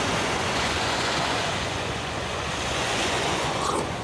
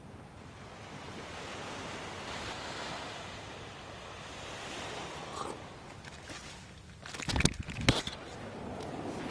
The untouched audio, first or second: second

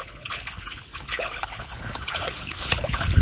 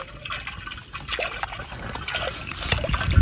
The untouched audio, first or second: second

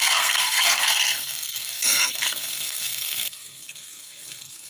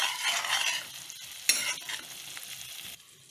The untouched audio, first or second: second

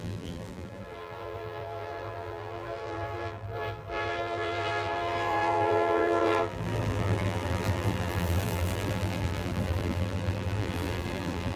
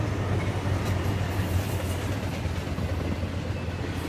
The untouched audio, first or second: second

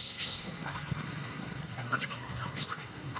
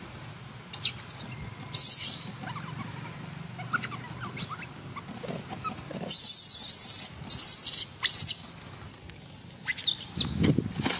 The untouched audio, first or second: second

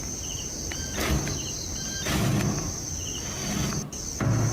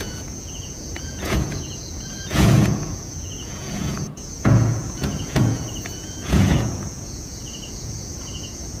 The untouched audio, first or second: first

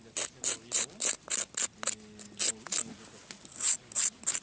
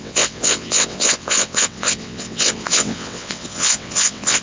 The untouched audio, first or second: first